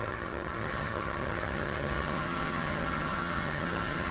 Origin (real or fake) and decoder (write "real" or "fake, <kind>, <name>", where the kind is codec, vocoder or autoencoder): fake, vocoder, HiFi-GAN